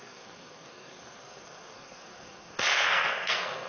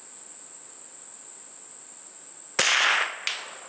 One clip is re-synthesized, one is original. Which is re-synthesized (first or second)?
first